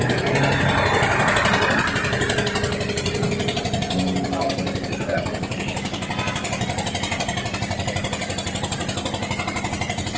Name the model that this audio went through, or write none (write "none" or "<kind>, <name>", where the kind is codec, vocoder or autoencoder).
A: none